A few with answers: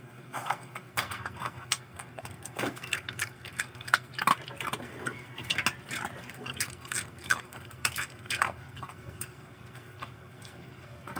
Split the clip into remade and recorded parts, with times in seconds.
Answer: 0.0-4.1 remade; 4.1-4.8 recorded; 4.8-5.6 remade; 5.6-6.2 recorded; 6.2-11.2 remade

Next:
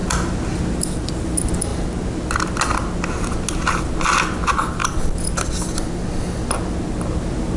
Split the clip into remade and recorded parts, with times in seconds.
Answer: 0.0-7.6 recorded

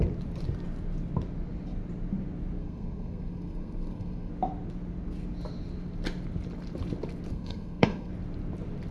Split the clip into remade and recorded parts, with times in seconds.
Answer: 0.0-2.6 recorded; 2.6-4.3 remade; 4.3-7.3 recorded; 7.3-8.1 remade; 8.1-8.9 recorded

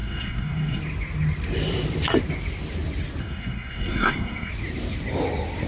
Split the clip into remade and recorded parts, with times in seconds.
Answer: 0.0-0.8 remade; 0.8-3.2 recorded; 3.2-4.5 remade; 4.5-5.7 recorded

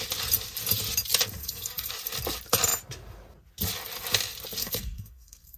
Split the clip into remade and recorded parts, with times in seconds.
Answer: 0.0-1.4 recorded; 1.4-1.9 remade; 1.9-4.6 recorded; 4.6-5.6 remade

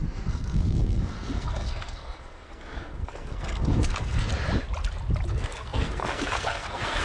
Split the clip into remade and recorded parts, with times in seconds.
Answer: 0.0-4.3 remade; 4.3-5.3 recorded; 5.3-7.0 remade